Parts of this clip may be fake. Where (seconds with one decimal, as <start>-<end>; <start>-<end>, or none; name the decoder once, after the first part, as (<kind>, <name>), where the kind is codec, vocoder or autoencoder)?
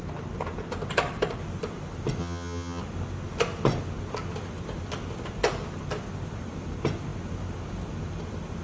2.2-2.8 (vocoder, HiFi-GAN)